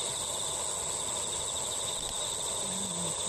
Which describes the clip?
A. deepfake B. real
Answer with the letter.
B